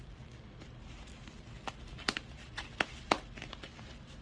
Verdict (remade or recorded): recorded